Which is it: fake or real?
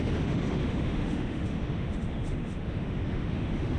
fake